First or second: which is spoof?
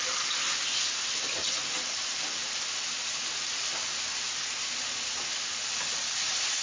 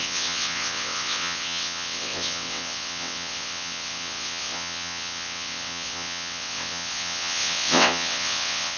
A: second